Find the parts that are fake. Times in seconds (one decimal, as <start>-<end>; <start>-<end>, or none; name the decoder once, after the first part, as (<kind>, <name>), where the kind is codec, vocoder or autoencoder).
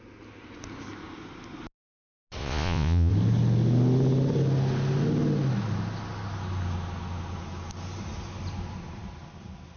2.4-3.1 (vocoder, Vocos)